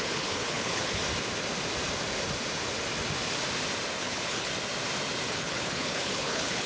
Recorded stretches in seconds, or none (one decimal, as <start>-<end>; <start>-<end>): 1.0-4.0; 4.5-5.3